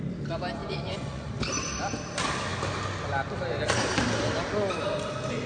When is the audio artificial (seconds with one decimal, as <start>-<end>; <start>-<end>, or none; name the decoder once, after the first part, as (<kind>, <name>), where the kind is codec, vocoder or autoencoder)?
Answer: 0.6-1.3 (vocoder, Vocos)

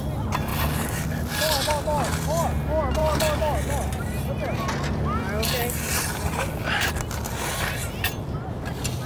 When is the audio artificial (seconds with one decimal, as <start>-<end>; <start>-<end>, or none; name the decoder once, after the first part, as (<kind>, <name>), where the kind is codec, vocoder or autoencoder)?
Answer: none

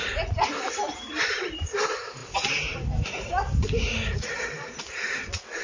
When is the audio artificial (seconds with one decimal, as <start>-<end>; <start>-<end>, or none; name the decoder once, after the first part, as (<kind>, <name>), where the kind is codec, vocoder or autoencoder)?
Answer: none

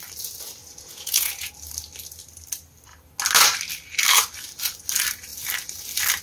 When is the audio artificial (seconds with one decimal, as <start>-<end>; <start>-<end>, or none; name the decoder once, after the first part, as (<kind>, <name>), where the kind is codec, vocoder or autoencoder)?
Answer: 0.6-1.5 (vocoder, Vocos)

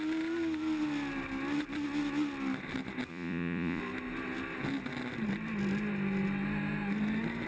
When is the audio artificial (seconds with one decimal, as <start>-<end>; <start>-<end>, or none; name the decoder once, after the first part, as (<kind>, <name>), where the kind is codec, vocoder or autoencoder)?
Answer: 3.1-3.8 (vocoder, Vocos)